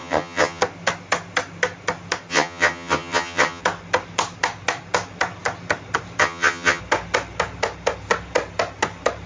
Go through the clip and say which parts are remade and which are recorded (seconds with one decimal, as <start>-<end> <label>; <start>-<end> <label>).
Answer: 0.0-0.6 remade; 0.6-2.3 recorded; 2.3-3.6 remade; 3.6-6.2 recorded; 6.2-6.8 remade; 6.8-9.3 recorded